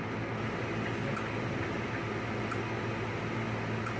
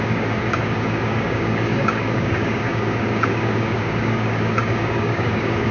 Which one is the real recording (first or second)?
first